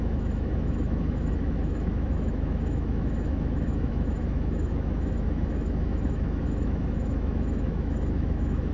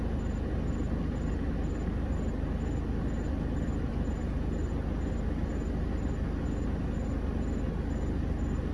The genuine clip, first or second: second